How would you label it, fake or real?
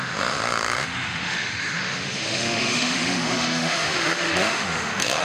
fake